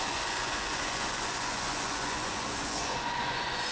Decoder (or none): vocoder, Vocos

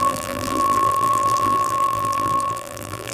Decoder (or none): vocoder, BigVGAN v2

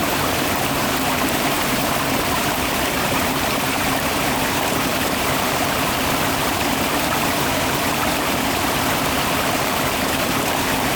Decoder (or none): vocoder, BigVGAN v2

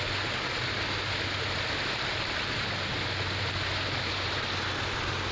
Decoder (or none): none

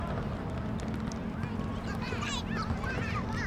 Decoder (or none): none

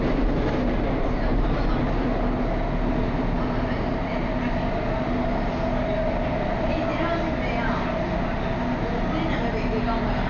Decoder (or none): none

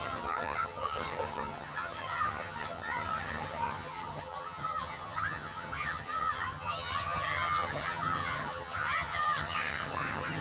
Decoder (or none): vocoder, HiFi-GAN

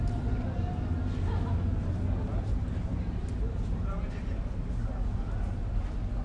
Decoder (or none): none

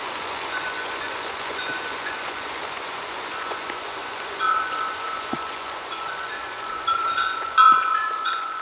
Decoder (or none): vocoder, Vocos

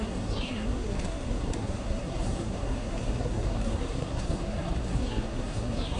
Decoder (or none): codec, SNAC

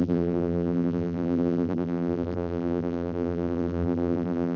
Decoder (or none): vocoder, BigVGAN v2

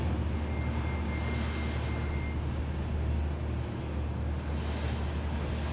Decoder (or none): none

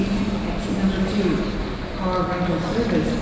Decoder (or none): none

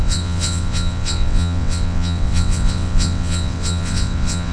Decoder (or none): vocoder, WaveNeXt